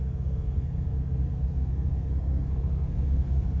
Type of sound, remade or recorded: remade